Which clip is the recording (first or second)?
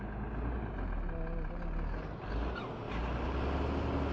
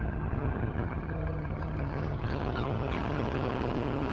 first